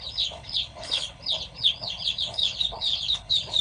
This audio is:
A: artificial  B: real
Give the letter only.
A